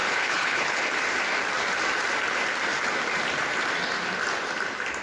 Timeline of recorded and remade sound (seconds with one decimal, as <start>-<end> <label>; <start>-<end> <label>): 0.0-0.8 remade; 0.8-5.0 recorded